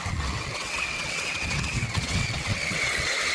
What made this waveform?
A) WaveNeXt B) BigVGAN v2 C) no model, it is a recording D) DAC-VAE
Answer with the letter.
A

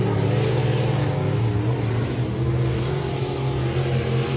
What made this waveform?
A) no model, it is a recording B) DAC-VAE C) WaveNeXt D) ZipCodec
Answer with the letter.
A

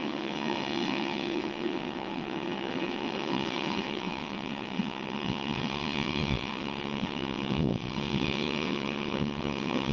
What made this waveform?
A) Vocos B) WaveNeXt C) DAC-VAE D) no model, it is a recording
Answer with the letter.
B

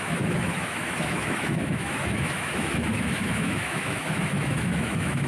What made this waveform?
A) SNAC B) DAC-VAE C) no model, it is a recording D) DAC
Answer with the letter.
B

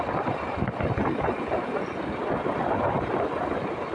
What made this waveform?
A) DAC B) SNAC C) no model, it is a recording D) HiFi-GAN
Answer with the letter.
C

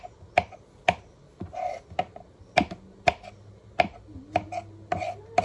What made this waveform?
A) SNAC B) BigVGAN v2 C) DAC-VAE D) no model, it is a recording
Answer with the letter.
D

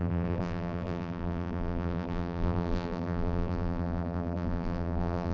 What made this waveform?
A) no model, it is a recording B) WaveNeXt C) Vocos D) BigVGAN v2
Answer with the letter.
D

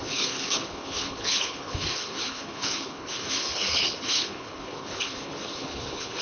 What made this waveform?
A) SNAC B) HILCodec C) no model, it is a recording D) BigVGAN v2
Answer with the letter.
B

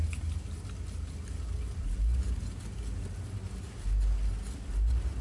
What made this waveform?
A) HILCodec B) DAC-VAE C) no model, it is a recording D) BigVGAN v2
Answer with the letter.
C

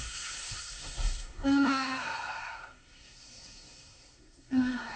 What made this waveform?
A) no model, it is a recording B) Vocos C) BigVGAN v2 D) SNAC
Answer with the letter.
D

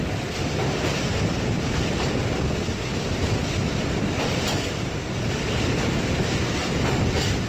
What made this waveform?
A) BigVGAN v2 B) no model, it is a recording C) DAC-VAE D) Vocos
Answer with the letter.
A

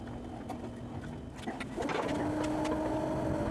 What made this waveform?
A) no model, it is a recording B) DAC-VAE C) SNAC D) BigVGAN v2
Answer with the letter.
A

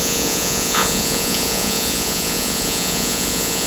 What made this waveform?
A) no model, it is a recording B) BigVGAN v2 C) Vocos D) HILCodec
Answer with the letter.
C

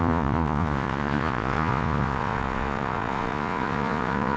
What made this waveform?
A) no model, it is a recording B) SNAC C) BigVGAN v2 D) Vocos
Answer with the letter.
D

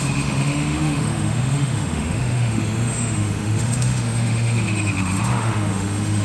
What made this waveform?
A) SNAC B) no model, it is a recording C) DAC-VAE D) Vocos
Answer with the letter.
C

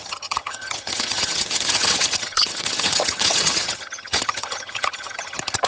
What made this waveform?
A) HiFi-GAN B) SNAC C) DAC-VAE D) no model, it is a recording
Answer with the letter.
A